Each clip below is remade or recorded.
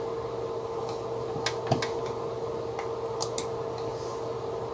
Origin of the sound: recorded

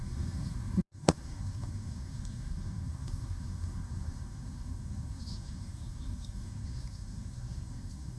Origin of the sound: remade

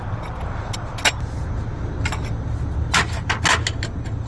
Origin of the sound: recorded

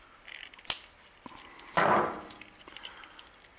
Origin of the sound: recorded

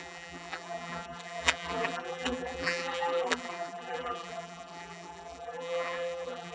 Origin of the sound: remade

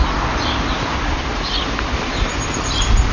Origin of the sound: recorded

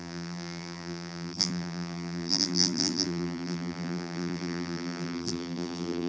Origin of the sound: remade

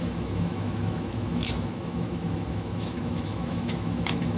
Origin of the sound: remade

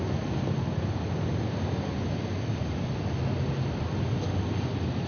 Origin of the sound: recorded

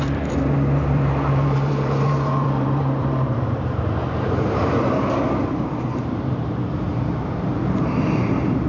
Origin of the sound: remade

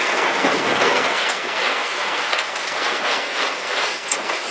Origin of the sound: remade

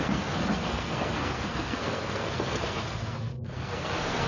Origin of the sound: remade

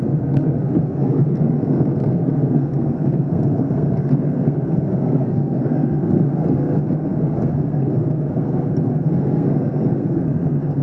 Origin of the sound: remade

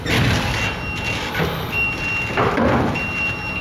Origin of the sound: recorded